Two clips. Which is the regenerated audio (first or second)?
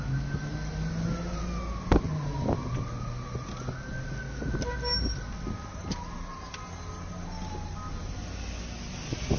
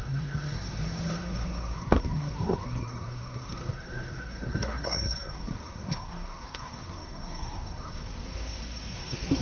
second